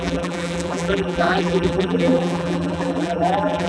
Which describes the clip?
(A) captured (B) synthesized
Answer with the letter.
B